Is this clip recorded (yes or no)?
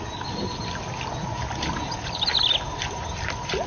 yes